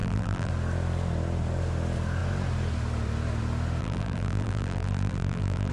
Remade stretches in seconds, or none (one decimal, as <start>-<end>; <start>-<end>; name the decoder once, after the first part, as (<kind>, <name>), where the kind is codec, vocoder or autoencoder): 0.0-0.5 (vocoder, BigVGAN v2); 3.8-5.7